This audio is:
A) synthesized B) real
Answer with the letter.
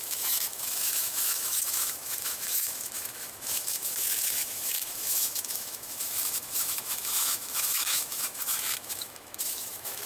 A